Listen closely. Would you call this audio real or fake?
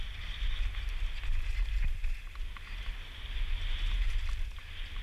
real